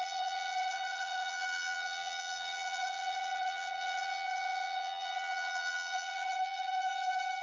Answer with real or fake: fake